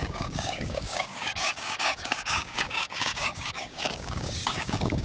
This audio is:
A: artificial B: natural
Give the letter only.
A